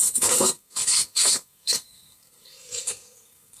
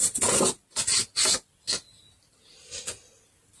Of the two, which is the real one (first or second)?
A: second